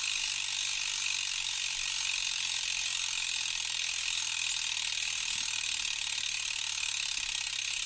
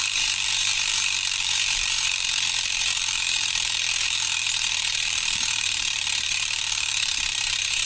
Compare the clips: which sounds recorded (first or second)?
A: first